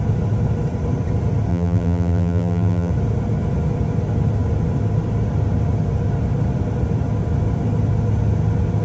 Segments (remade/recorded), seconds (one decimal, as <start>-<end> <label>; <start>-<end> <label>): 0.0-1.5 recorded; 1.5-2.9 remade; 2.9-8.8 recorded